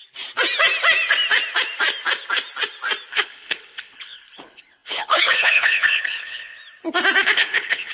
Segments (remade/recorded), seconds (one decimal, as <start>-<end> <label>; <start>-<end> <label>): 0.0-3.1 recorded; 3.1-6.6 remade; 6.6-7.2 recorded; 7.2-7.9 remade